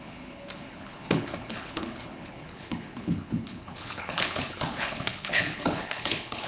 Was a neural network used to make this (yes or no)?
yes